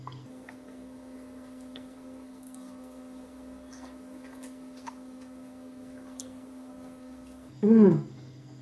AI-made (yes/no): yes